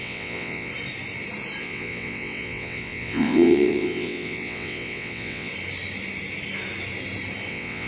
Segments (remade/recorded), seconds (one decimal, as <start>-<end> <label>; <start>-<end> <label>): 0.0-0.7 remade; 0.7-1.6 recorded; 1.6-5.5 remade; 5.5-7.5 recorded; 7.5-7.9 remade